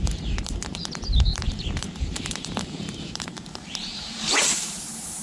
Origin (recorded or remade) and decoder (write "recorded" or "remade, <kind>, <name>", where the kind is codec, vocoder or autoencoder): remade, vocoder, BigVGAN v2